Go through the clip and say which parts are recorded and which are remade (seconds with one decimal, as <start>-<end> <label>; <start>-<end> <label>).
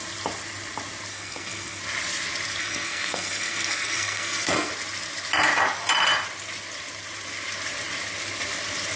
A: 0.0-1.1 recorded; 1.1-1.8 remade; 1.8-2.6 recorded; 2.6-4.7 remade; 4.7-9.0 recorded